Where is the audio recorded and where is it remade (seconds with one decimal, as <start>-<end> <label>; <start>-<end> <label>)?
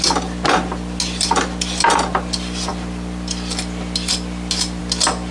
0.0-5.3 recorded